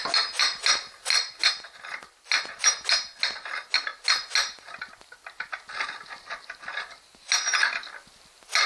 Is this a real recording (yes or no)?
yes